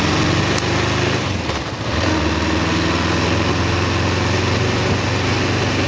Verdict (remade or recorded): recorded